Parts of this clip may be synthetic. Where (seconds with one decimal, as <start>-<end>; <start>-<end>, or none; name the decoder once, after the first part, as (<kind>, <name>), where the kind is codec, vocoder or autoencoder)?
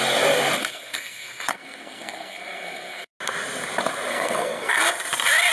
0.6-3.1 (codec, SNAC); 4.1-4.8